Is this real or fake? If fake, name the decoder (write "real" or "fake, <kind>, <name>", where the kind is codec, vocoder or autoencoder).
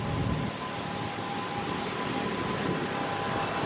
real